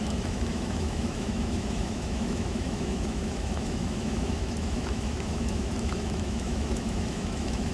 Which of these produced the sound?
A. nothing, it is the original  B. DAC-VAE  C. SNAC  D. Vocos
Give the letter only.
B